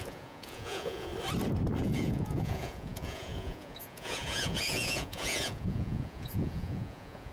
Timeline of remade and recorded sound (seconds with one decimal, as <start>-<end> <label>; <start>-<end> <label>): 0.0-1.1 remade; 1.1-1.8 recorded; 1.8-7.3 remade